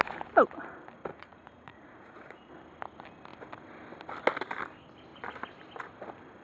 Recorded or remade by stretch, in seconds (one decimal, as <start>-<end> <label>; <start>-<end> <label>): 0.0-1.1 recorded; 1.1-2.5 remade; 2.5-6.4 recorded